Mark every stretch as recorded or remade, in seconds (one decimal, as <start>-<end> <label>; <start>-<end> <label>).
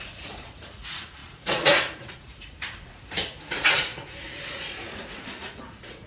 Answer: 0.0-6.1 remade